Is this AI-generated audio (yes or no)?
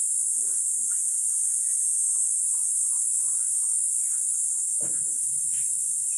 yes